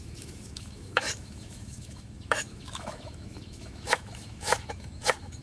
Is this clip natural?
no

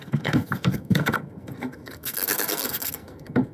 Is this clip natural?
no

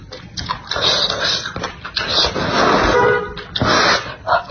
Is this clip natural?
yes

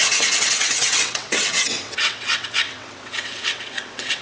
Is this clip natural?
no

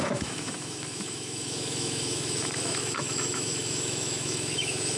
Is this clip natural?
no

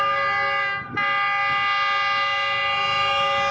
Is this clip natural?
yes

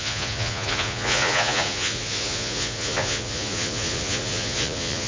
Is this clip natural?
no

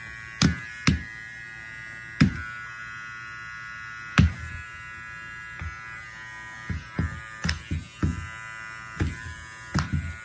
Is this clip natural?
yes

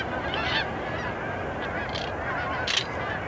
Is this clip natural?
yes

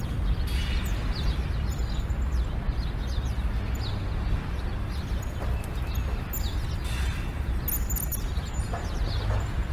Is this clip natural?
yes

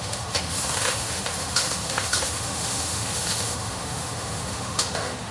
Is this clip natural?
no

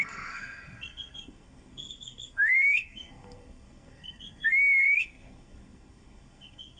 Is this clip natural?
no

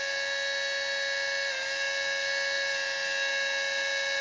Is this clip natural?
yes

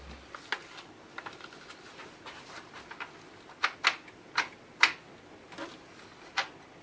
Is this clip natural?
yes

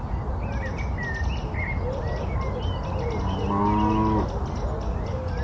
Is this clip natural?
yes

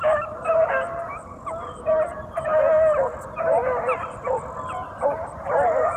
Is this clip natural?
yes